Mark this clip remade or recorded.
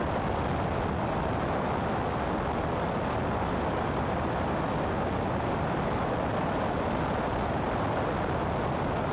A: recorded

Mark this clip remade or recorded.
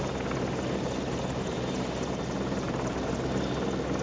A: recorded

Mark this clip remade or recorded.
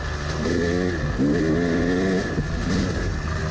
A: recorded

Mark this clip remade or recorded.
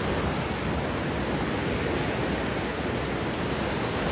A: recorded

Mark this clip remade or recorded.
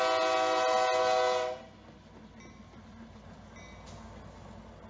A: recorded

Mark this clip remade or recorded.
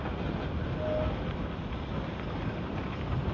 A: recorded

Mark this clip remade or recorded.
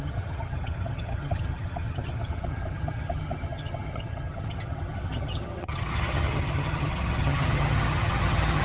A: remade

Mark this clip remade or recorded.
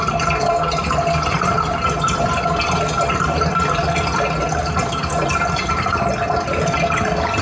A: recorded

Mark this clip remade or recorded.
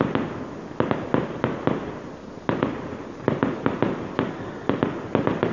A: recorded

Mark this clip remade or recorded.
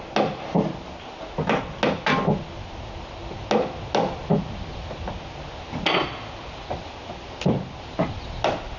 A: recorded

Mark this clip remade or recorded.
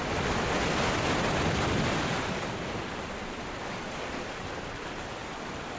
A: recorded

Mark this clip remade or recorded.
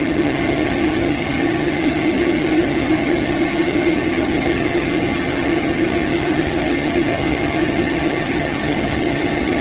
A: remade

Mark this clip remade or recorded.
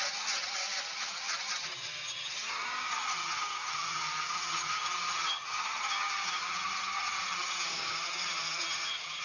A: remade